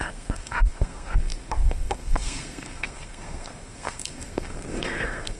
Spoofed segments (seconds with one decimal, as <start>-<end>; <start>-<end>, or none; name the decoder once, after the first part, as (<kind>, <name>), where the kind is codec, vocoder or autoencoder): 0.0-5.4 (codec, SNAC)